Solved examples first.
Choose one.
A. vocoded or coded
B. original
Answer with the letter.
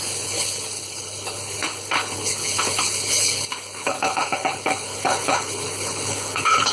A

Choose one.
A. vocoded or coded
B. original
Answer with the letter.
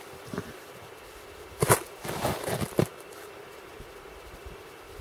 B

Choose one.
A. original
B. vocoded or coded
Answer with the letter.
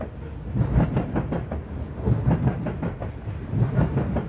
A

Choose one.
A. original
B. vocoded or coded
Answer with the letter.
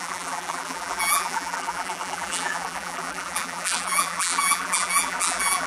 B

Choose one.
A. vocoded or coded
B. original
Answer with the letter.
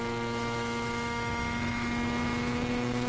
A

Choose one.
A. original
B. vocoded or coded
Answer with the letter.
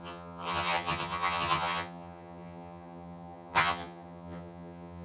B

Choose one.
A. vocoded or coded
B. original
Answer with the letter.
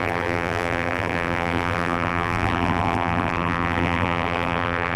A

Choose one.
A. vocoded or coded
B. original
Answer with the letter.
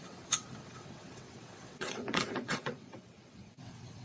A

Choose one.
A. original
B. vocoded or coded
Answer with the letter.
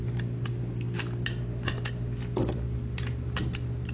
A